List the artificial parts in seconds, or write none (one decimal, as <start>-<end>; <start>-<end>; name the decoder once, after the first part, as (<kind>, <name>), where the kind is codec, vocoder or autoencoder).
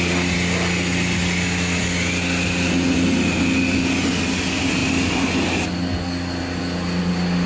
none